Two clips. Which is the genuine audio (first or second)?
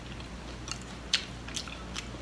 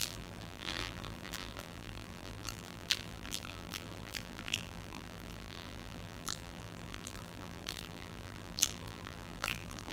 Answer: first